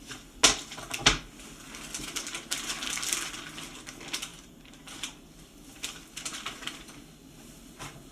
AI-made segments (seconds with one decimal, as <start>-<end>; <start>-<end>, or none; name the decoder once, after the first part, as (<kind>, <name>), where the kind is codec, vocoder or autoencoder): 4.3-7.3 (vocoder, BigVGAN v2)